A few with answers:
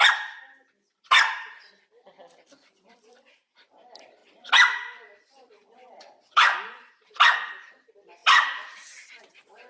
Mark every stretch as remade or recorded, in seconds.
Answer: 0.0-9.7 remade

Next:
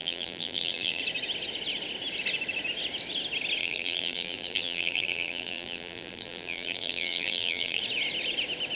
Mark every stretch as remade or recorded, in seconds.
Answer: 0.0-1.0 remade; 1.0-3.6 recorded; 3.6-7.8 remade; 7.8-8.7 recorded

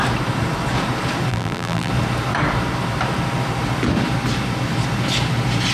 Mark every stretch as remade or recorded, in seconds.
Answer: 0.0-1.3 recorded; 1.3-1.9 remade; 1.9-5.7 recorded

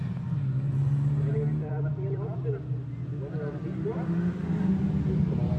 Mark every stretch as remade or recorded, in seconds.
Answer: 0.0-5.6 recorded

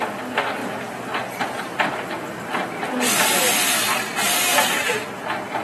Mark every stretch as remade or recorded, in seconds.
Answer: 0.0-4.5 recorded; 4.5-5.0 remade; 5.0-5.6 recorded